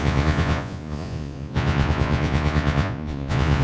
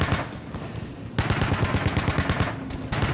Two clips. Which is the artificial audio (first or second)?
first